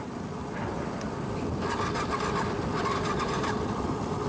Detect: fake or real fake